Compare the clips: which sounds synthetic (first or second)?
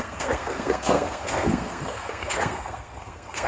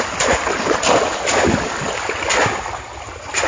first